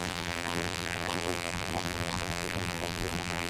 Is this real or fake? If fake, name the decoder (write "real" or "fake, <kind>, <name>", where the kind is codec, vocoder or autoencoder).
fake, vocoder, BigVGAN v2